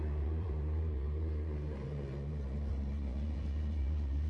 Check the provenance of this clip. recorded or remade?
remade